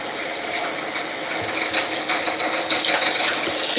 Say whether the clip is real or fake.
real